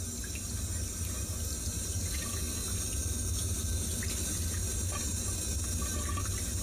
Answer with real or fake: real